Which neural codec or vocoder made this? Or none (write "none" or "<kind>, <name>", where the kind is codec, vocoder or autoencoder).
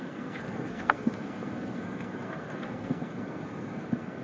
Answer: codec, SNAC